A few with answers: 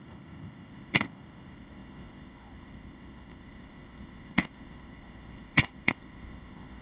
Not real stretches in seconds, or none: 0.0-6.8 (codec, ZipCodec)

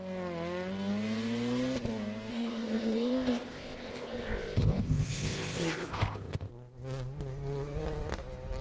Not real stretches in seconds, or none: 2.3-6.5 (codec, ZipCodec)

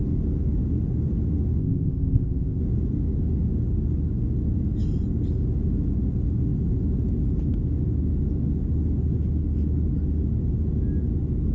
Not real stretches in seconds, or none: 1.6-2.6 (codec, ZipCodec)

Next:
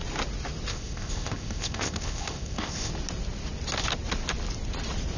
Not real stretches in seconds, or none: 0.7-2.9 (codec, ZipCodec)

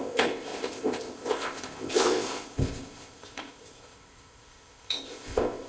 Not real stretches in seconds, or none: 0.0-5.7 (codec, ZipCodec)

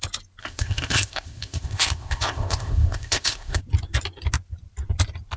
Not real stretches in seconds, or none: 0.4-3.6 (codec, ZipCodec)

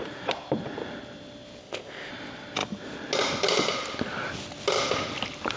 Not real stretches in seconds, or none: 1.6-2.1 (codec, ZipCodec)

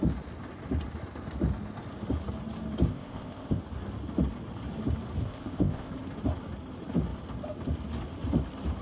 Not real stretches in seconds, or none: 2.9-3.6 (codec, ZipCodec); 5.2-5.9